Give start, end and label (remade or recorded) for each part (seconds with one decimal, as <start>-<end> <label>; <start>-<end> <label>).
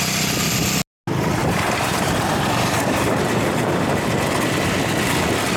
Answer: 0.0-1.4 recorded; 1.4-3.9 remade; 3.9-5.6 recorded